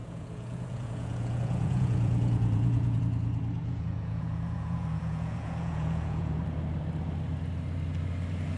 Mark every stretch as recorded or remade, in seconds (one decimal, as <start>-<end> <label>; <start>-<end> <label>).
0.0-3.0 remade; 3.0-3.6 recorded; 3.6-6.4 remade; 6.4-8.6 recorded